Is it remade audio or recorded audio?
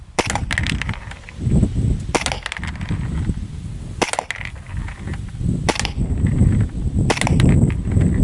recorded